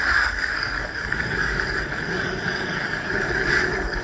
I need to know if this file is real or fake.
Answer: fake